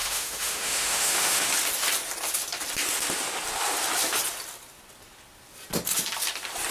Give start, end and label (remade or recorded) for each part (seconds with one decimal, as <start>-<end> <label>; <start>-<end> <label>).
0.0-1.5 remade; 1.5-6.7 recorded